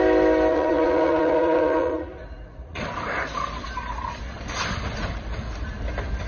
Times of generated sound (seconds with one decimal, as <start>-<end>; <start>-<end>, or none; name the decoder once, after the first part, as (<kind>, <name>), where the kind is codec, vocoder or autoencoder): 0.5-2.8 (vocoder, Vocos)